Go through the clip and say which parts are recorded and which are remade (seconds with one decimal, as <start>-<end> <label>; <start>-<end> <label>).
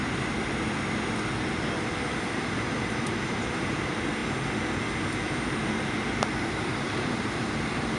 0.0-2.1 recorded; 2.1-4.2 remade; 4.2-7.1 recorded; 7.1-8.0 remade